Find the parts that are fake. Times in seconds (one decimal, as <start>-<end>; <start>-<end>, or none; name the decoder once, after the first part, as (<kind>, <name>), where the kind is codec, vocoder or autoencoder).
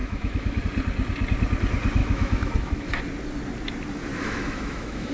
0.0-0.6 (autoencoder, DAC-VAE); 2.0-3.0; 4.1-5.1